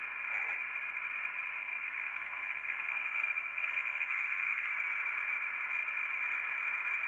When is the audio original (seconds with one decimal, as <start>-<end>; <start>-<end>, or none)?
0.0-1.6; 4.7-7.1